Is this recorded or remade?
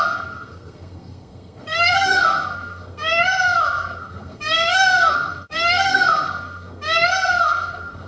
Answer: remade